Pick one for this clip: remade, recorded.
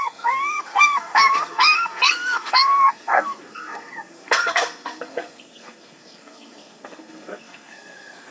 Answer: remade